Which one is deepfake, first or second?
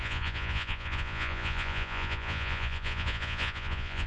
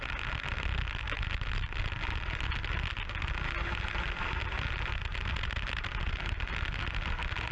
first